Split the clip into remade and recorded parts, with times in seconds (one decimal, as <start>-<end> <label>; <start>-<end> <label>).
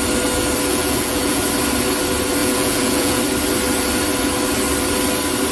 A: 0.0-0.7 recorded; 0.7-1.4 remade; 1.4-2.4 recorded; 2.4-3.2 remade; 3.2-5.5 recorded